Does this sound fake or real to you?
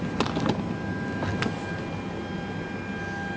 real